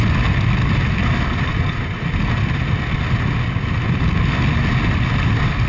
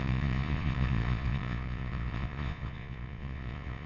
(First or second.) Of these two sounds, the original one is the first